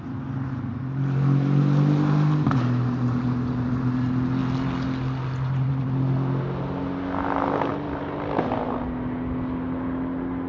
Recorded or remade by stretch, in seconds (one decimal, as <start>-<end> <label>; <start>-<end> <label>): 0.0-10.5 recorded